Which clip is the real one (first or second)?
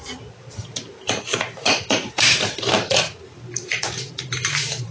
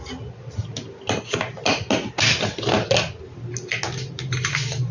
second